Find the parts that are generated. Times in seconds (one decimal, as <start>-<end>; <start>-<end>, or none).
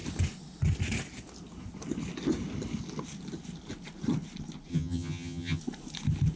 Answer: 4.7-5.6